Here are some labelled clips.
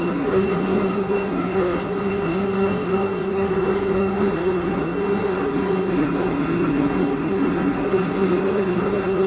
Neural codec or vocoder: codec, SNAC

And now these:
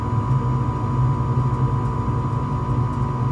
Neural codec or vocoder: none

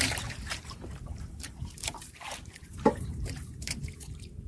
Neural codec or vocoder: vocoder, BigVGAN v2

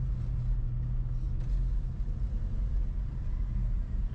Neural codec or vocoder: none